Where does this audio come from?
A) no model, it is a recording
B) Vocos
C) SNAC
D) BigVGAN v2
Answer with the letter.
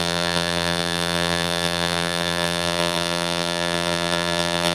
D